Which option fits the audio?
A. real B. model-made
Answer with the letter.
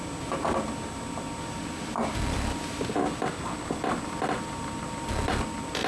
A